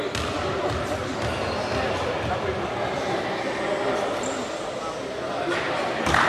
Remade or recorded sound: recorded